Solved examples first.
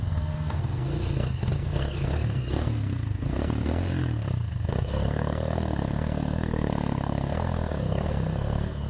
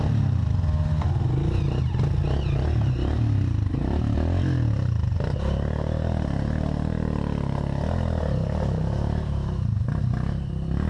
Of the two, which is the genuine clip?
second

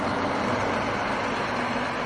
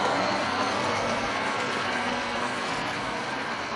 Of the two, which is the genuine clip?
first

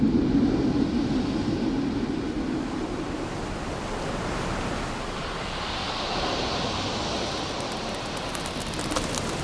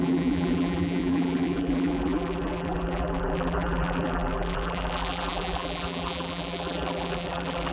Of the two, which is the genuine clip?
first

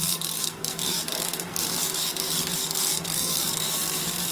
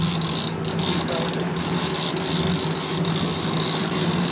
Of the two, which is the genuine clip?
second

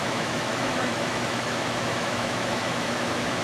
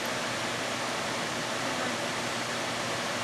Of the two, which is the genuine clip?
second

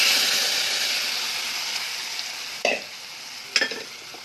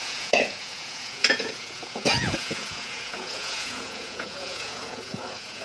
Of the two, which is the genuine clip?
first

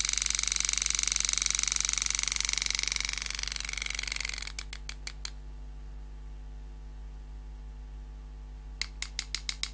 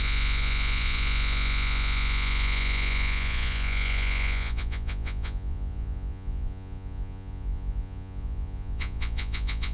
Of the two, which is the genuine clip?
first